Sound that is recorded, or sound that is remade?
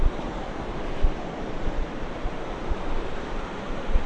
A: remade